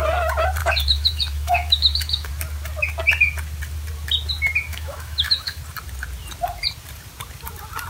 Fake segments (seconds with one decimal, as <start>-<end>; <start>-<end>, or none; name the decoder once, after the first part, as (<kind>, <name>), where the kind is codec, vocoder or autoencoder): 0.6-2.3 (autoencoder, DAC-VAE); 4.7-5.6